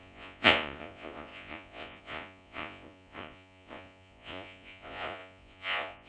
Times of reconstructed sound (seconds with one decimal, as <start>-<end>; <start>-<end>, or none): 0.0-6.1